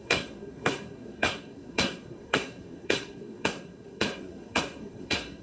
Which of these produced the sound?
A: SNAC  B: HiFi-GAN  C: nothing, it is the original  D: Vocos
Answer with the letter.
A